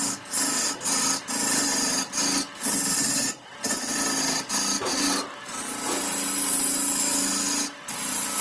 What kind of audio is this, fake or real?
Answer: real